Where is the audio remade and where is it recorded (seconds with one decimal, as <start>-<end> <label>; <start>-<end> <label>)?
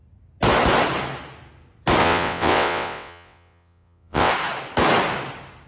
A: 0.0-2.0 recorded; 2.0-4.3 remade; 4.3-5.7 recorded